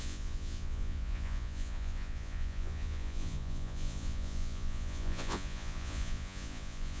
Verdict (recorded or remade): remade